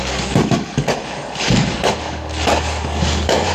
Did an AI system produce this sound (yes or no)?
yes